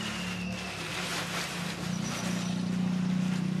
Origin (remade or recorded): recorded